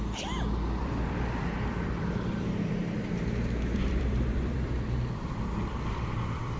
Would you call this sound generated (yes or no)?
yes